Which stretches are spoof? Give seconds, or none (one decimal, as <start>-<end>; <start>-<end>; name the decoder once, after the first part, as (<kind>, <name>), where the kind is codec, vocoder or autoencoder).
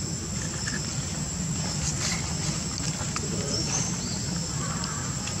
2.1-4.2 (vocoder, BigVGAN v2)